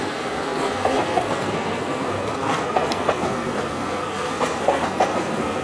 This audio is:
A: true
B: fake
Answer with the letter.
B